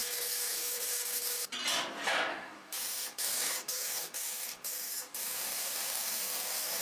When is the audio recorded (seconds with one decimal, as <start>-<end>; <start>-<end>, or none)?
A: 1.5-2.3